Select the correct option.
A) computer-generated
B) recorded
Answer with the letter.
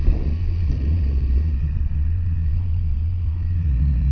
A